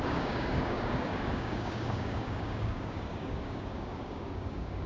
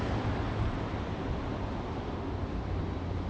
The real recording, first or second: second